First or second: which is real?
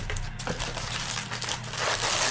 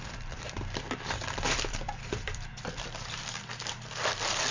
first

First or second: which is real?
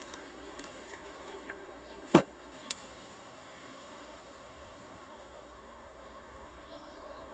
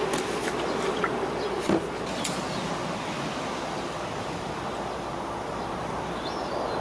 second